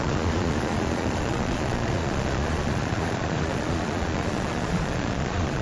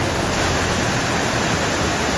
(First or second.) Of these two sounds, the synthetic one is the first